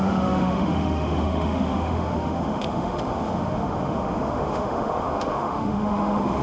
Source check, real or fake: fake